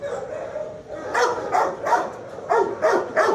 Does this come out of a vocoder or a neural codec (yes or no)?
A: yes